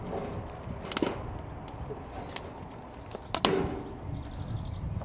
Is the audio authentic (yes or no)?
yes